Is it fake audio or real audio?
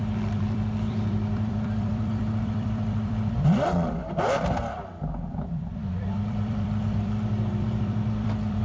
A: fake